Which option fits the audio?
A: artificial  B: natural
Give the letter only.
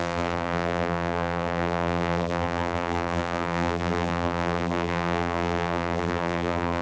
A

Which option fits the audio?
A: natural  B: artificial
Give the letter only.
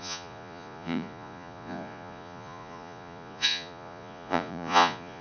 B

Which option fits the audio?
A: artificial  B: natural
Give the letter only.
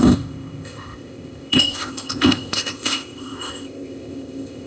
A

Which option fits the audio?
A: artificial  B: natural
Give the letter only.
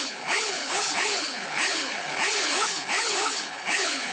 A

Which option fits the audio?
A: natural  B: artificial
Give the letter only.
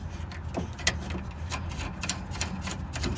A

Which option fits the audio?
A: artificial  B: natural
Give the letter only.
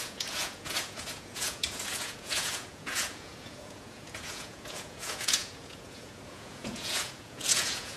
A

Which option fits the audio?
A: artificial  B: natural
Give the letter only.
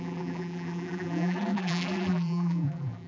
A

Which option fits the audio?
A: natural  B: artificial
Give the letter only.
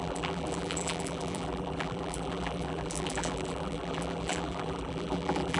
B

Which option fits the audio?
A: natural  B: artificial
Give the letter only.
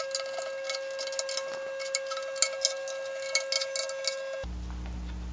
A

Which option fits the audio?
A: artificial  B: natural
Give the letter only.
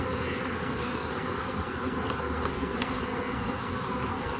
A